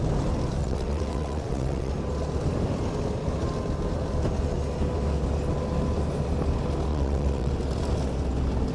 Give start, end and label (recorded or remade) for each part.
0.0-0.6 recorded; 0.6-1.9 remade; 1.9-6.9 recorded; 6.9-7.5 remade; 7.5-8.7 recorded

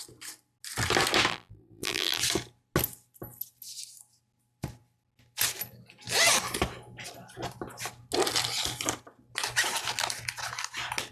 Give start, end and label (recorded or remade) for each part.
0.0-1.3 recorded; 1.3-2.2 remade; 2.2-11.1 recorded

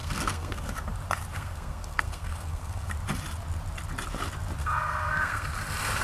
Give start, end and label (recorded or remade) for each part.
0.0-0.7 remade; 0.7-1.3 recorded; 1.3-2.9 remade; 2.9-4.6 recorded; 4.6-5.5 remade; 5.5-6.0 recorded

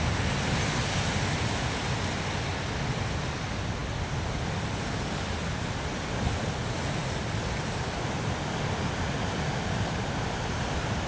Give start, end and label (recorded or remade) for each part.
0.0-11.1 recorded

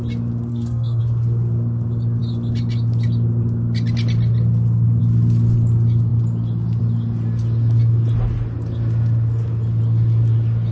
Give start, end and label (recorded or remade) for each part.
0.0-0.5 recorded; 0.5-1.0 remade; 1.0-10.7 recorded

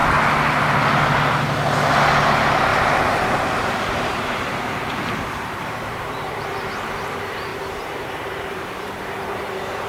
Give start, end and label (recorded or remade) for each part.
0.0-2.7 recorded; 2.7-6.9 remade; 6.9-7.5 recorded; 7.5-9.0 remade; 9.0-9.9 recorded